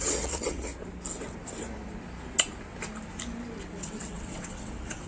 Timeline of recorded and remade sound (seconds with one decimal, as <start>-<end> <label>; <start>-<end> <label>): 0.0-0.7 remade; 0.7-3.8 recorded; 3.8-5.1 remade